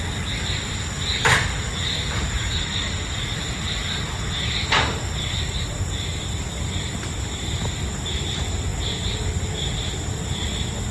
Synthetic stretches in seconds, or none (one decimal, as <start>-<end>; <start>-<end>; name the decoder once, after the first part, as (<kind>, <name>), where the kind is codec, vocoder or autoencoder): none